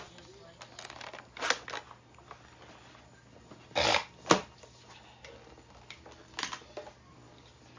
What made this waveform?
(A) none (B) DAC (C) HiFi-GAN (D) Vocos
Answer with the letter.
A